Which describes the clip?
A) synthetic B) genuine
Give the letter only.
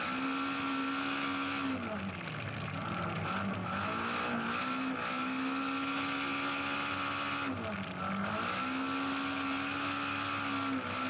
B